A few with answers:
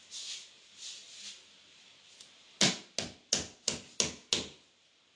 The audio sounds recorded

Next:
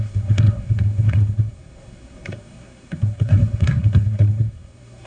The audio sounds remade